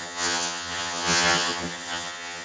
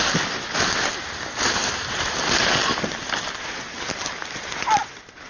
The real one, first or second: second